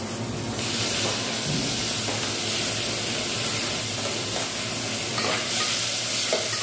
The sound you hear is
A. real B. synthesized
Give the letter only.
A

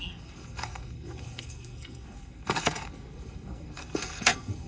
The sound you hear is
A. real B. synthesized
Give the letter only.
B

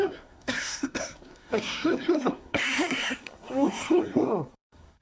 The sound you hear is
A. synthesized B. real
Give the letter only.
A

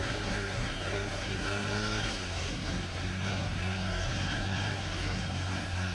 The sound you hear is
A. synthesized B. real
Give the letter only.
A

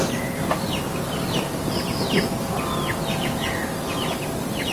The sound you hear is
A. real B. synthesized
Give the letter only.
A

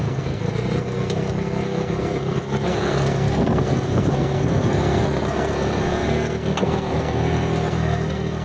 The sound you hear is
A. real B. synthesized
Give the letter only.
B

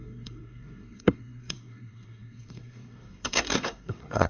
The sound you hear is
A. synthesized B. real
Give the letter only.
A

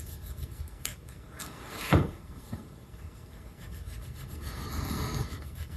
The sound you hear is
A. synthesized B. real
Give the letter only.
A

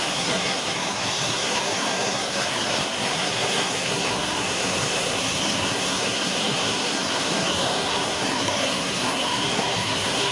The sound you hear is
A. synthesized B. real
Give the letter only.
A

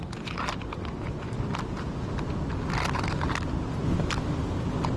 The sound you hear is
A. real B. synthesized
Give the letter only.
A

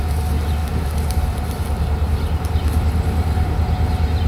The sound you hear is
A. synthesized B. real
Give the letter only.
B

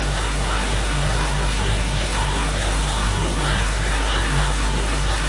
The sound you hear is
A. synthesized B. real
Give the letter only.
A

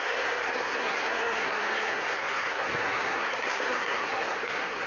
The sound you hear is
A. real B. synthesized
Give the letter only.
B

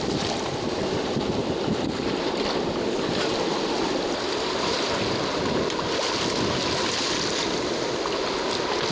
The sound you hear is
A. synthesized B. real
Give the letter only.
B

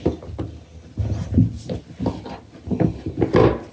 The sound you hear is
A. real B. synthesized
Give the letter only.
A